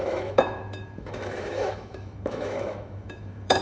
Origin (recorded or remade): remade